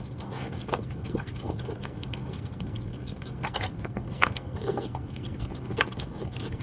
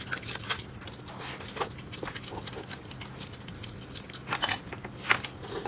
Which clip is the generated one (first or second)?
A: first